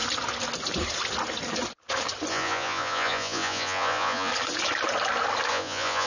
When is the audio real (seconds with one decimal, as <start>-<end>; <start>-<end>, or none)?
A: 0.0-2.3; 4.3-5.5